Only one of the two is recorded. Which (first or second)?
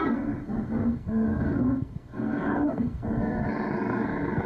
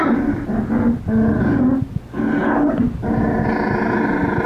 second